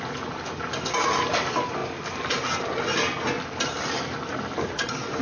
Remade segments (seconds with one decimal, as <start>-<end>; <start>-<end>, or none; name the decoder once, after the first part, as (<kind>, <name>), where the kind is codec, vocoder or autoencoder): none